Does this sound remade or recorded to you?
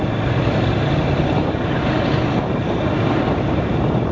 remade